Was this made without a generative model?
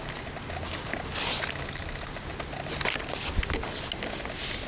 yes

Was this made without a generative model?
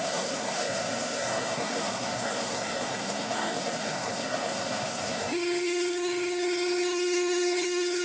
no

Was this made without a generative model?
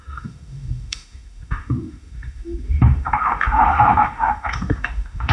no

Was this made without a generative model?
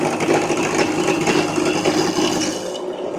yes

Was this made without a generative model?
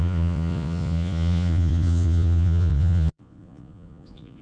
no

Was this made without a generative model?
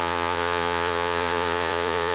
no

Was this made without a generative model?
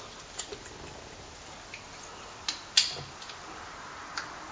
yes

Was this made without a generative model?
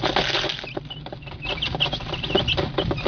yes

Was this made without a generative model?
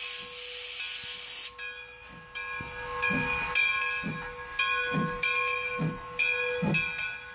yes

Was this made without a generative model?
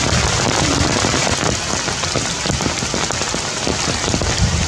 yes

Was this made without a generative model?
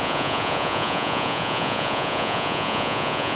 no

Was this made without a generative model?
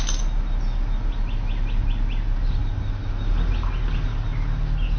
yes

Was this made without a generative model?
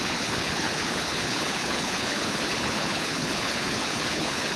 no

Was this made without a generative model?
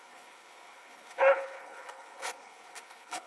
no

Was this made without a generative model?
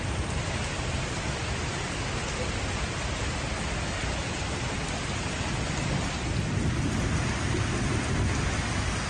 yes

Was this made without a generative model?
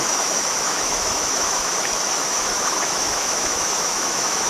no